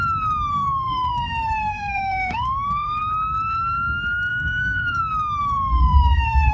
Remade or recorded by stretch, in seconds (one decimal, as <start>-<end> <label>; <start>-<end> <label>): 0.0-0.5 recorded; 0.5-3.0 remade; 3.0-4.3 recorded; 4.3-5.0 remade; 5.0-5.4 recorded; 5.4-6.5 remade